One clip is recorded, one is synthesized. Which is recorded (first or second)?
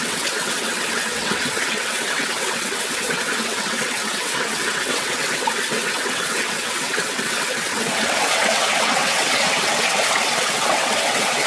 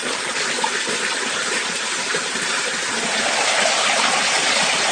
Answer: second